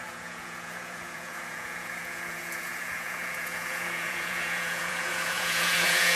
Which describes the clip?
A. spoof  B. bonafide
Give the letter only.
A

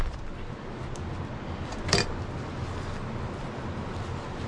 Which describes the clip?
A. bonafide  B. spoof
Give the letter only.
A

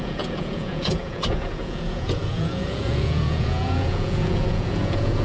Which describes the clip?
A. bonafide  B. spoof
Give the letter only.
B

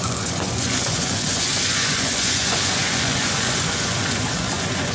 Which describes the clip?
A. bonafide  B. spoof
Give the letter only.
B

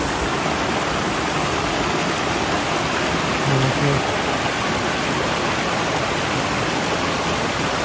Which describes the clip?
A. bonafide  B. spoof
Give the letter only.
A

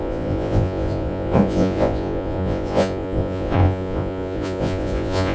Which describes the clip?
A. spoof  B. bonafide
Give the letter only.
A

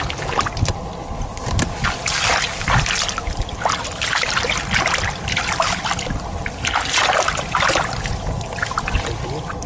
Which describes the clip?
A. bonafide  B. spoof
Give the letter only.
A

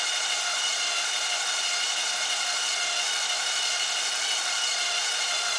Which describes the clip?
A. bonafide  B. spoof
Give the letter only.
A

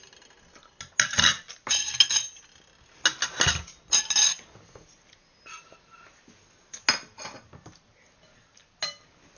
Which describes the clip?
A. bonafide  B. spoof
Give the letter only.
A